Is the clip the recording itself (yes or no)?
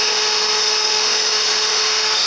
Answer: no